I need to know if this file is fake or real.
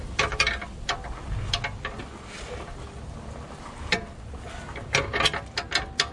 real